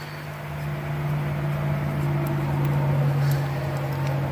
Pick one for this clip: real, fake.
real